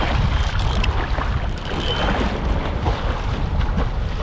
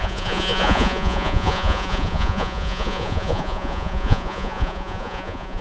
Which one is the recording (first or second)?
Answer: first